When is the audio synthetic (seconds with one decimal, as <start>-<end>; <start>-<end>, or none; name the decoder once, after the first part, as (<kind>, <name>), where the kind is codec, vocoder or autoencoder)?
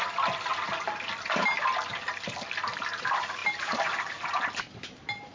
3.4-4.1 (vocoder, BigVGAN v2)